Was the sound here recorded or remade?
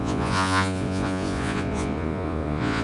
remade